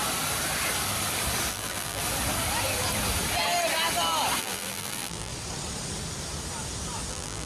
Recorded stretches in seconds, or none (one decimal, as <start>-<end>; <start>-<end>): 0.0-1.5; 2.0-4.4; 5.3-7.1